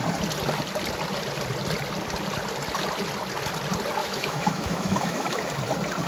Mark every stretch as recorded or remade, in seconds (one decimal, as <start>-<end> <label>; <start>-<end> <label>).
0.0-4.0 recorded; 4.0-5.4 remade; 5.4-6.1 recorded